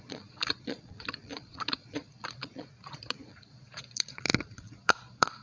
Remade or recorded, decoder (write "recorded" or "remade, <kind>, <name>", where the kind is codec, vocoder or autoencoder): remade, vocoder, Vocos